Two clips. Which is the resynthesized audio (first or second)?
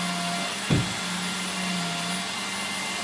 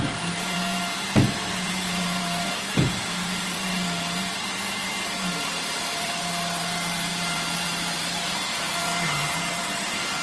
second